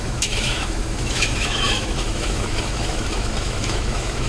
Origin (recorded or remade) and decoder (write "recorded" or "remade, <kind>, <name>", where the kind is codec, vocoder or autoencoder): remade, autoencoder, DAC-VAE